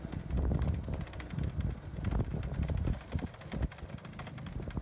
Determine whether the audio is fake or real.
real